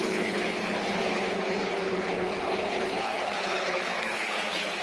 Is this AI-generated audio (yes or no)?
yes